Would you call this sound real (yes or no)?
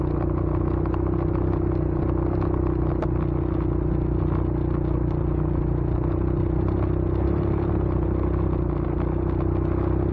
yes